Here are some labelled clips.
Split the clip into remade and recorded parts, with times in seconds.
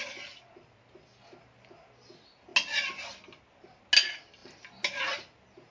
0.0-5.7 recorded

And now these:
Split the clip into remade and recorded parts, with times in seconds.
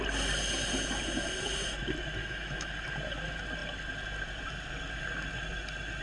0.0-2.2 recorded; 2.2-2.7 remade; 2.7-6.0 recorded